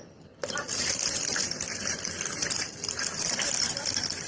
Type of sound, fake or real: fake